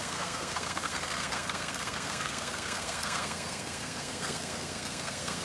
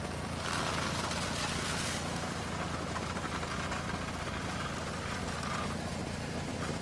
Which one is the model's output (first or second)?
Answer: first